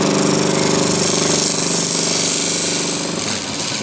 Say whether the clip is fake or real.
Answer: real